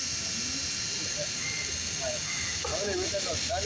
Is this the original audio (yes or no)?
yes